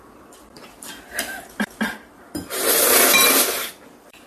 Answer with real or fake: fake